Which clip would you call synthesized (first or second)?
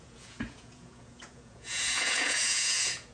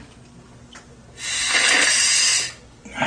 first